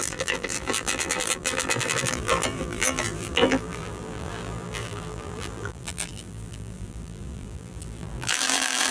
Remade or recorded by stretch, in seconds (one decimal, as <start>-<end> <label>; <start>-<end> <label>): 0.0-8.9 remade